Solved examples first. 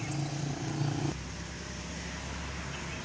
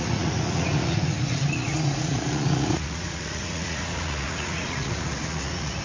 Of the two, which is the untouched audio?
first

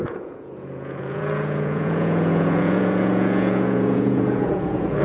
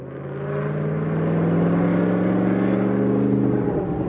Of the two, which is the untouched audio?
second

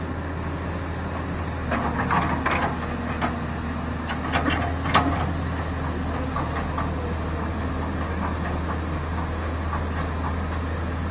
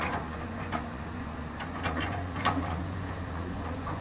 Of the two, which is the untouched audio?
first